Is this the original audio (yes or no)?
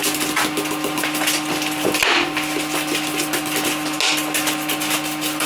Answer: yes